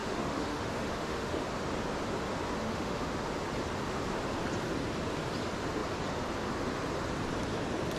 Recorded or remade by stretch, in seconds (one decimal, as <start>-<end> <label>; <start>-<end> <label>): 0.0-1.4 remade; 1.4-2.6 recorded; 2.6-3.1 remade; 3.1-8.0 recorded